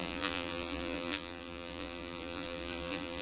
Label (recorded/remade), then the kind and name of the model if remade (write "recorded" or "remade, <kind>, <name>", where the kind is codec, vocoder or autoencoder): remade, vocoder, BigVGAN v2